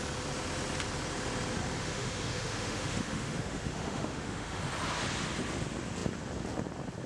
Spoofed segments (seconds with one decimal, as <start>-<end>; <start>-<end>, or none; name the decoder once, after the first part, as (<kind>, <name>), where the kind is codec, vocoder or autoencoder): 1.8-4.6 (autoencoder, DAC-VAE)